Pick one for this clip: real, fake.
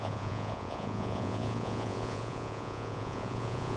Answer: fake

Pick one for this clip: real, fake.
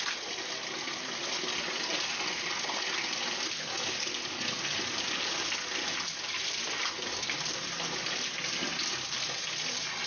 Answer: real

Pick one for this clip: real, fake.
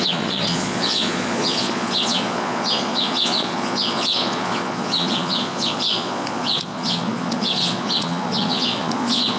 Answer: fake